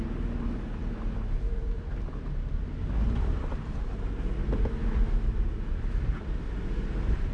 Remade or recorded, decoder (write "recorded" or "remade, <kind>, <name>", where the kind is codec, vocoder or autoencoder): recorded